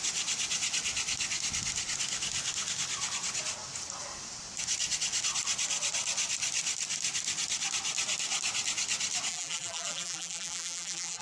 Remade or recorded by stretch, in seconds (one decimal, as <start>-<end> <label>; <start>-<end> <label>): 0.0-9.3 recorded; 9.3-11.2 remade